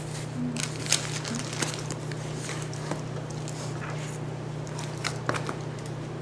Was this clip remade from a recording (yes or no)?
no